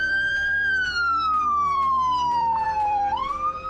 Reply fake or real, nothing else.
fake